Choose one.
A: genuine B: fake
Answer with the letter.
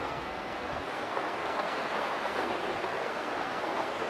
B